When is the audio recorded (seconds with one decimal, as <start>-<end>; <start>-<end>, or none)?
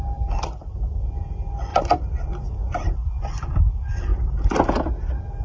0.0-1.7; 3.6-5.4